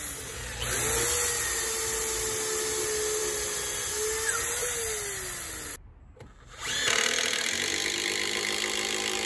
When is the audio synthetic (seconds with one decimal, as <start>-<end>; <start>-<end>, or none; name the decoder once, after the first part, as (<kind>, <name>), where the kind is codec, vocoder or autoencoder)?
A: none